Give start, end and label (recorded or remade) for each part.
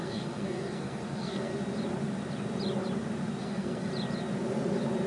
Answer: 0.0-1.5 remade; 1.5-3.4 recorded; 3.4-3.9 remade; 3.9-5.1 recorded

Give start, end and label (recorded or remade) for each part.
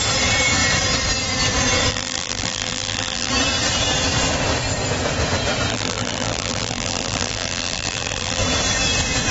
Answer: 0.0-1.9 recorded; 1.9-3.3 remade; 3.3-5.7 recorded; 5.7-8.4 remade; 8.4-9.3 recorded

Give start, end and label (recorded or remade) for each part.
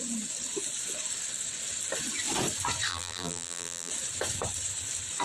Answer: 0.0-2.9 recorded; 2.9-3.9 remade; 3.9-5.2 recorded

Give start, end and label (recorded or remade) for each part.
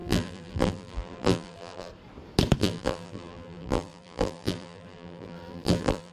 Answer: 0.0-1.9 remade; 1.9-2.6 recorded; 2.6-6.1 remade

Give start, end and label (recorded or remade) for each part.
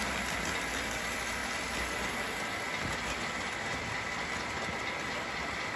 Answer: 0.0-5.8 recorded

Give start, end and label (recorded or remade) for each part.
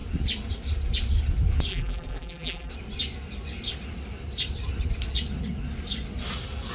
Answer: 0.0-1.7 recorded; 1.7-2.7 remade; 2.7-6.7 recorded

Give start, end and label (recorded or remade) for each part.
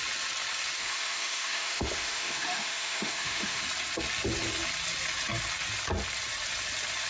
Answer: 0.0-0.8 recorded; 0.8-3.6 remade; 3.6-7.1 recorded